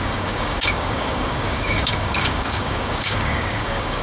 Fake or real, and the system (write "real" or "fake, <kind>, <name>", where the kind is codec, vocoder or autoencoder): fake, codec, DAC